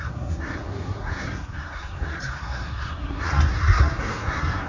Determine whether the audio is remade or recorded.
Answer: remade